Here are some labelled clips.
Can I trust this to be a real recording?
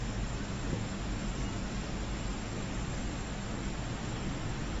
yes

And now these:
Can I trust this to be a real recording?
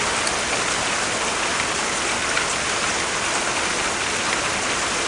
yes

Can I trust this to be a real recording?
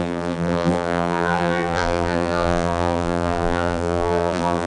no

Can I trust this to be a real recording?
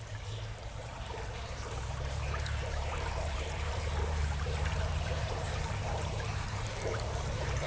no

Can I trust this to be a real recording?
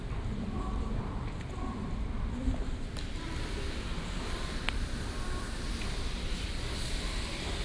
no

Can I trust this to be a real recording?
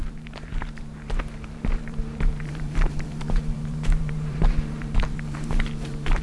no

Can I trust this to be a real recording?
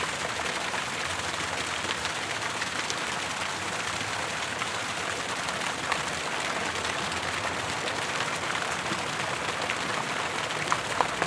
yes